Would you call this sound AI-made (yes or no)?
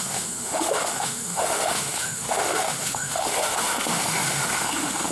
yes